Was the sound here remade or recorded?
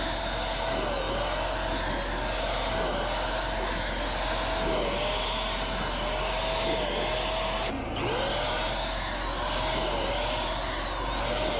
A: recorded